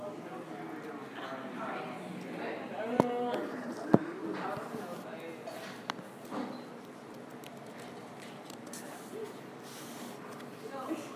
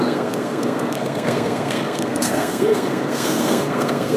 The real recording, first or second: first